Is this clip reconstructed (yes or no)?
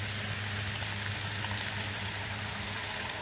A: no